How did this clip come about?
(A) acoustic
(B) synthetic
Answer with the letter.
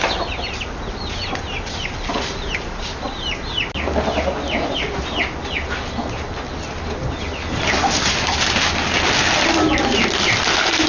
A